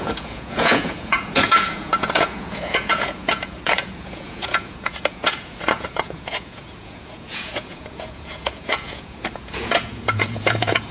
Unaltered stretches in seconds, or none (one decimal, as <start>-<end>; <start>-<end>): none